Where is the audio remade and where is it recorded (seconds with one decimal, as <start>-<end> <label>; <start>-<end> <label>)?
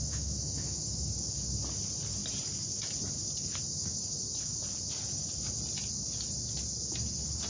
0.0-1.1 remade; 1.1-7.5 recorded